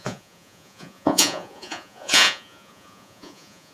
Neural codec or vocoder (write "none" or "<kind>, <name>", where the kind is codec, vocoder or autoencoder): vocoder, Vocos